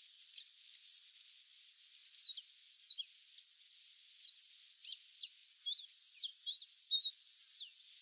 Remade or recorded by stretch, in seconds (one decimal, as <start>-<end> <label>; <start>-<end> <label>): 0.0-8.0 recorded